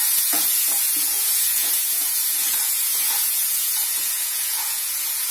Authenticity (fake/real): fake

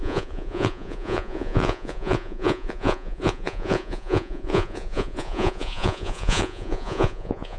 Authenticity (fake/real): fake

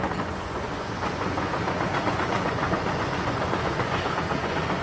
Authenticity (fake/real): fake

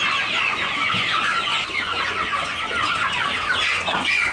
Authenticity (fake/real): fake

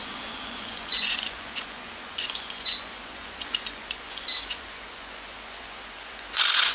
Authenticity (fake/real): fake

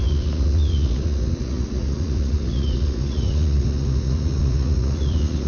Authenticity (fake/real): fake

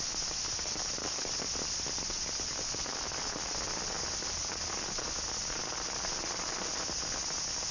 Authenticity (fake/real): real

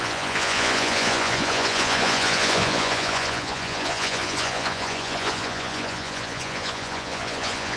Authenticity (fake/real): fake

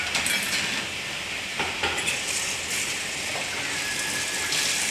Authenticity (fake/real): real